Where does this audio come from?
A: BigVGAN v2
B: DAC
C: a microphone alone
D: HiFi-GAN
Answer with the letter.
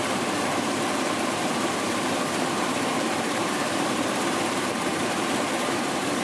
A